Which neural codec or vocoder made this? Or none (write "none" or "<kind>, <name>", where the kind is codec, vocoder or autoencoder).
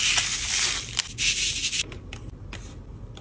none